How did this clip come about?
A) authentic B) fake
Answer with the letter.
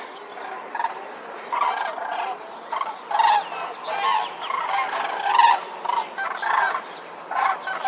A